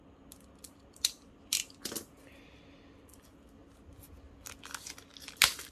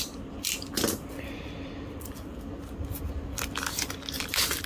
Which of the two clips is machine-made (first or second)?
second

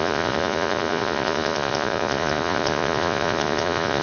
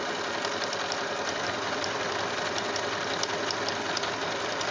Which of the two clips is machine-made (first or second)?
first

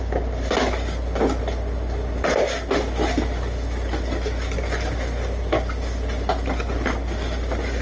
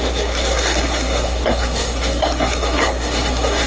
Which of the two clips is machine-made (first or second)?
second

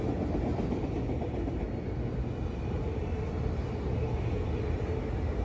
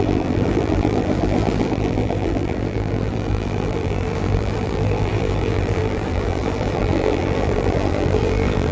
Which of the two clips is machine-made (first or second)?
second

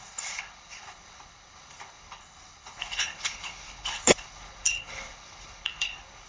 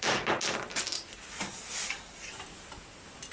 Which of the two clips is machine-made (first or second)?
first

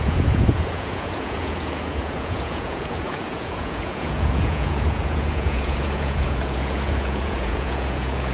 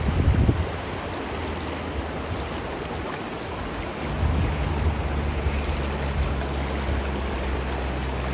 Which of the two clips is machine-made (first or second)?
first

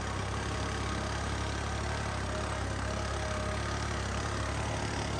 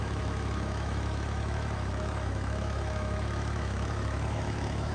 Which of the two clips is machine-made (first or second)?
second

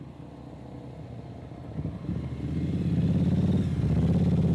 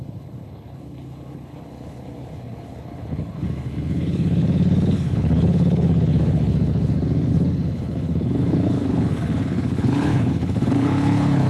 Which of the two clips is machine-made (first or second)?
second